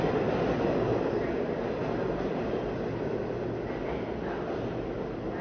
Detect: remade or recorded recorded